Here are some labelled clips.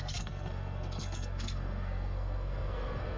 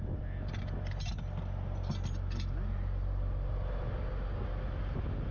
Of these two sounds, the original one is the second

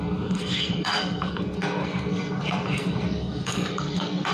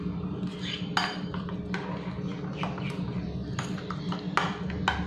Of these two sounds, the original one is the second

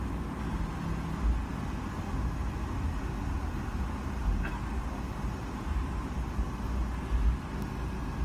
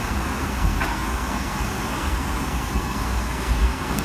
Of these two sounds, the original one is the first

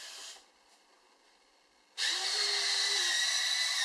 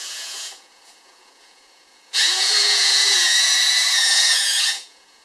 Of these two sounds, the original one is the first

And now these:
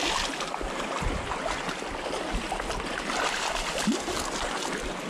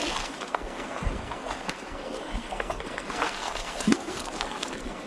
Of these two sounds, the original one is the first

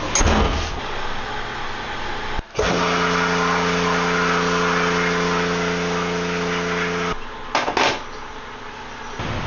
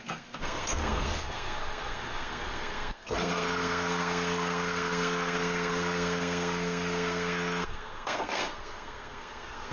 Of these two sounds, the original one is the first